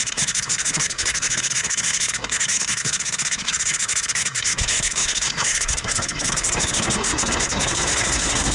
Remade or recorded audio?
remade